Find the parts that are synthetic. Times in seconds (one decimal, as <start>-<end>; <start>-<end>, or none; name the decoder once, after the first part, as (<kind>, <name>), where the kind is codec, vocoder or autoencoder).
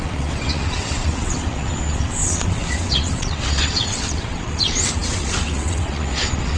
0.0-6.6 (vocoder, WaveNeXt)